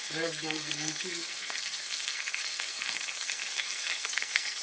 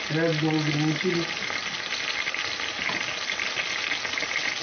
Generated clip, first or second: first